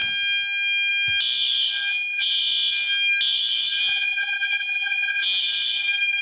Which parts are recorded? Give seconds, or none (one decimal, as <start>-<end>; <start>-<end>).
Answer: 0.0-1.9; 2.4-3.8; 5.4-6.2